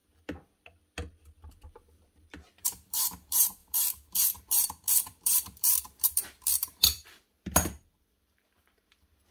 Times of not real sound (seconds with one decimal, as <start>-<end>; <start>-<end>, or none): 1.5-9.3